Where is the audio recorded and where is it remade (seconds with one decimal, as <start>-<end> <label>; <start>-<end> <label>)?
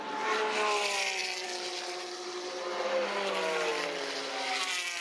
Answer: 0.0-5.0 recorded